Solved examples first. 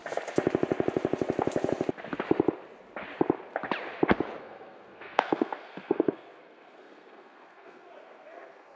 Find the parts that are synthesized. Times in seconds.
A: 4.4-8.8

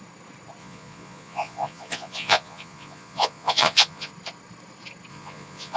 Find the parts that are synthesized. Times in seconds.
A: 0.6-4.1; 5.1-5.8

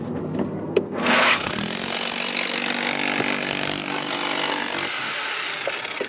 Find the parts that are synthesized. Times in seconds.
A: 0.7-1.5

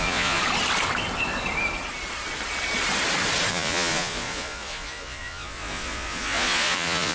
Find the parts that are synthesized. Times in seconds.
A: 0.0-0.4; 3.5-7.1

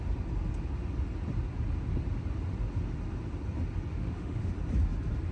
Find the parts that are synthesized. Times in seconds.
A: 3.9-4.5

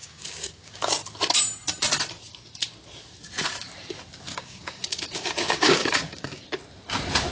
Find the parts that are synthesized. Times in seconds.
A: 0.0-0.9; 4.3-6.4